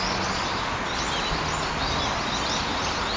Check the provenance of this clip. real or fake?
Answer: real